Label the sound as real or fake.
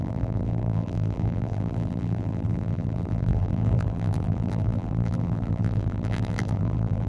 fake